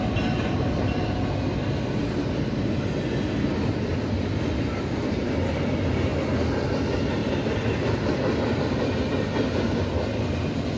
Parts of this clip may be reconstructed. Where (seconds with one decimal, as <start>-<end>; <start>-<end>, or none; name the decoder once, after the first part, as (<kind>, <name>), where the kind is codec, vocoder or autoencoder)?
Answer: none

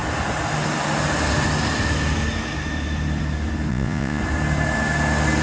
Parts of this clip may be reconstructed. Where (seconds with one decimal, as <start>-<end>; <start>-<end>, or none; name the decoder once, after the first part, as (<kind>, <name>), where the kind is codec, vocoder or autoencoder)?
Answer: 3.7-4.2 (vocoder, Vocos)

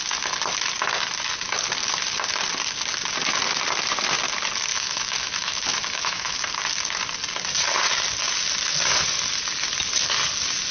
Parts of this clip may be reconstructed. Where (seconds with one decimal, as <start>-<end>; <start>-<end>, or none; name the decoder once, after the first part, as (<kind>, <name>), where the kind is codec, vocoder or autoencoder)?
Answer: 4.7-6.4 (autoencoder, DAC-VAE)

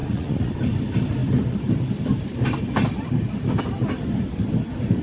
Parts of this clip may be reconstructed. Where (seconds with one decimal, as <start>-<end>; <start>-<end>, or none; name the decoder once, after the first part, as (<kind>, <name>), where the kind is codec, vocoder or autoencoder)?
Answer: 0.0-0.5 (vocoder, Vocos)